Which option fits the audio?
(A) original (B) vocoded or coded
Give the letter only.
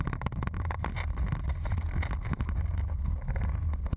A